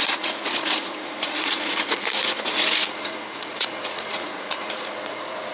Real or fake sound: fake